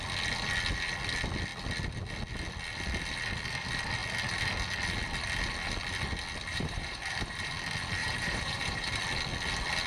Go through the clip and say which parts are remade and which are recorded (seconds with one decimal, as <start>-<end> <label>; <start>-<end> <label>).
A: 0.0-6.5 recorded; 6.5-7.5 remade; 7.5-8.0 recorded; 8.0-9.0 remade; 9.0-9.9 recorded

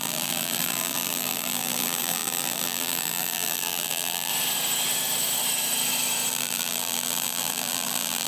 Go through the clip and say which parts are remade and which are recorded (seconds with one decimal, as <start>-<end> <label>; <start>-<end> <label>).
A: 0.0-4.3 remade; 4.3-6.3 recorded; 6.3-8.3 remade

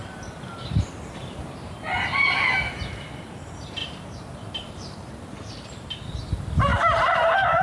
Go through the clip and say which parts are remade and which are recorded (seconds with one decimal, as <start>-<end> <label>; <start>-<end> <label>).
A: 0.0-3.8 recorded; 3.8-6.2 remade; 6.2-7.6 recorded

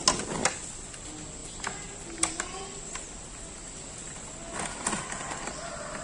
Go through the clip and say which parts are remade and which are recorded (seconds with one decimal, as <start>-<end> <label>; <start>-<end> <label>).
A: 0.0-6.0 recorded

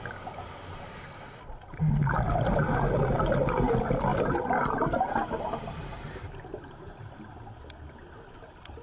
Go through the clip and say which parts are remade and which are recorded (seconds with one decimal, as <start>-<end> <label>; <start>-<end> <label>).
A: 0.0-4.1 recorded; 4.1-7.0 remade; 7.0-8.8 recorded

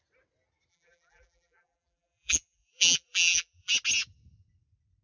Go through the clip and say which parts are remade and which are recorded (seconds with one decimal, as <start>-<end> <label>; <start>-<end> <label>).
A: 0.0-0.7 recorded; 0.7-3.7 remade; 3.7-5.0 recorded

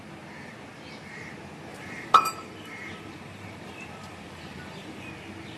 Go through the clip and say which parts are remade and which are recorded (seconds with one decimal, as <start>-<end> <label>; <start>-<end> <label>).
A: 0.0-1.7 recorded; 1.7-5.1 remade; 5.1-5.6 recorded

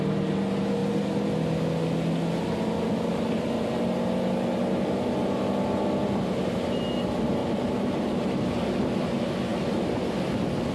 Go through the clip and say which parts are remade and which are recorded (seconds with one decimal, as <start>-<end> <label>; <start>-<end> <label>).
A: 0.0-7.4 recorded; 7.4-8.5 remade; 8.5-10.7 recorded